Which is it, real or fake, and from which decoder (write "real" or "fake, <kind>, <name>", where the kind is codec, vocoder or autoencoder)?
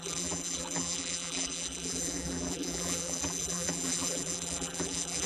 fake, vocoder, BigVGAN v2